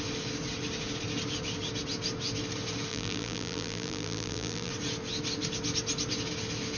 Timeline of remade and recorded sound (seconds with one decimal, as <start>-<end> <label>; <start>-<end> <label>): 0.0-2.9 recorded; 2.9-4.7 remade; 4.7-6.8 recorded